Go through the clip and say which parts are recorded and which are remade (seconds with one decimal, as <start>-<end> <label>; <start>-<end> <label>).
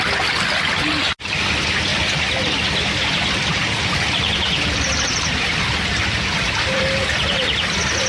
0.0-1.9 recorded; 1.9-6.8 remade; 6.8-8.1 recorded